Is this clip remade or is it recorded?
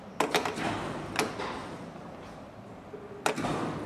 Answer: recorded